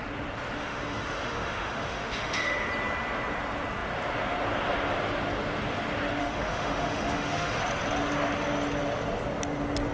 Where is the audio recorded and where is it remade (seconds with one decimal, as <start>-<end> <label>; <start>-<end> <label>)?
0.0-0.6 recorded; 0.6-2.7 remade; 2.7-6.2 recorded; 6.2-7.6 remade; 7.6-9.9 recorded